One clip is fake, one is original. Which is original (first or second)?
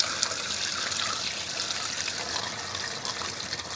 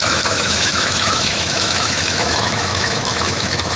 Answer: first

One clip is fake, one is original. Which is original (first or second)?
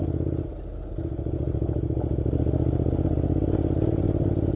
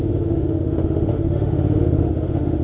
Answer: first